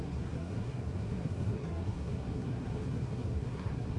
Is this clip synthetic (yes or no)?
yes